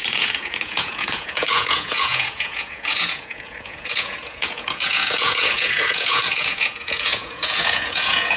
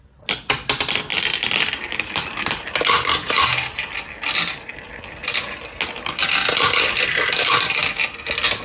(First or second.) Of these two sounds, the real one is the second